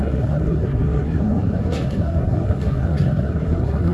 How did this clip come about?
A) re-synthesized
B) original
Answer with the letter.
A